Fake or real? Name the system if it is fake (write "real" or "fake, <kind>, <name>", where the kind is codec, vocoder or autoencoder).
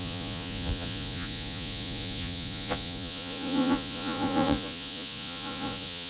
fake, vocoder, Vocos